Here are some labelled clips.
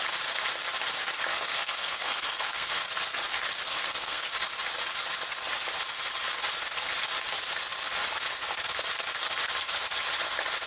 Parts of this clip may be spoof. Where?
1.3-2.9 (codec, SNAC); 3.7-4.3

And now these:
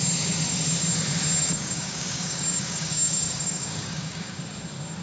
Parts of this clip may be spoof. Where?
1.4-4.4 (codec, DAC)

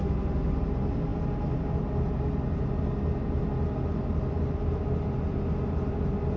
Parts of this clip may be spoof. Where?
none

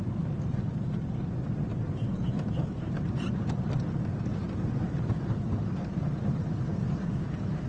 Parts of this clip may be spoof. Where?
1.7-3.3 (vocoder, BigVGAN v2); 4.3-5.1

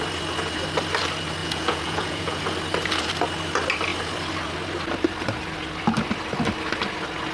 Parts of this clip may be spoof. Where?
1.4-2.4 (vocoder, Vocos)

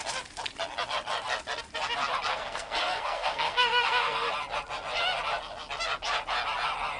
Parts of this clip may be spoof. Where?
2.3-4.3 (codec, SNAC)